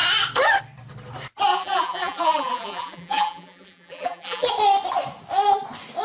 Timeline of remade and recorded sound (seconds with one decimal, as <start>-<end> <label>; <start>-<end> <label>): 0.0-1.5 recorded; 1.5-4.5 remade; 4.5-6.0 recorded